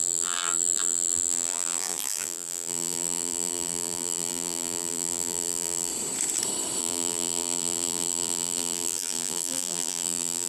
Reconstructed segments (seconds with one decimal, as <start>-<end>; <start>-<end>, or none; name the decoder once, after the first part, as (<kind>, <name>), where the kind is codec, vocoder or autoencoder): 0.0-5.9 (vocoder, BigVGAN v2); 6.8-10.5